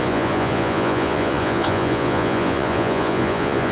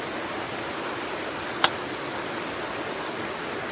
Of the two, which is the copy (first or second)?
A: first